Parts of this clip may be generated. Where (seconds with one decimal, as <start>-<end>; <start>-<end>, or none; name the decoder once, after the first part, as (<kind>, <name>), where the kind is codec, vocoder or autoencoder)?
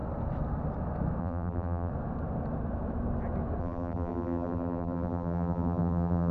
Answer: 1.2-1.9 (vocoder, BigVGAN v2); 3.6-6.3